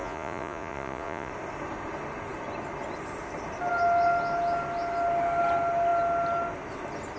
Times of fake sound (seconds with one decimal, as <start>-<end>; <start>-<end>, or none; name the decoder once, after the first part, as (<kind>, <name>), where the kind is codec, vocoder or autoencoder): 0.0-1.3 (vocoder, Vocos)